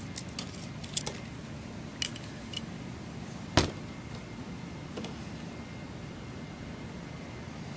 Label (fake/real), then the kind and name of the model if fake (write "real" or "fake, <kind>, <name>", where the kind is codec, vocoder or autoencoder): real